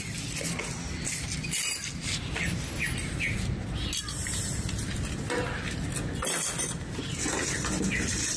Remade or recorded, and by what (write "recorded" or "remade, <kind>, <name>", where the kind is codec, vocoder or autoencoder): recorded